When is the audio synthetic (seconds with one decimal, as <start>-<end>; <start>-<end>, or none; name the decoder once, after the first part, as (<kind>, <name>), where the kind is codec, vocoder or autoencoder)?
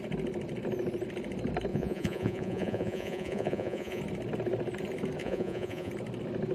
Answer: 1.7-4.0 (vocoder, Vocos); 5.2-5.9